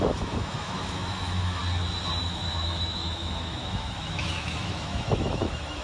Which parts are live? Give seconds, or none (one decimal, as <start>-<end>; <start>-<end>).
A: 1.6-2.2